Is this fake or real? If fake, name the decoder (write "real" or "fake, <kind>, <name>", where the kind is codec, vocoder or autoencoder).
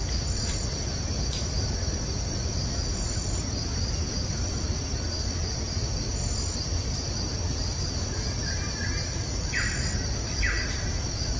real